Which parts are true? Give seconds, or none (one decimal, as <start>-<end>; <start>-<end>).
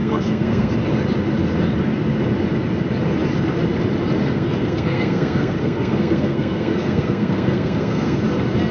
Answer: 0.7-4.2; 8.2-8.7